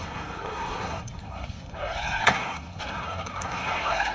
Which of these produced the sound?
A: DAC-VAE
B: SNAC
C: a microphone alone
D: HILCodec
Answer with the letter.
B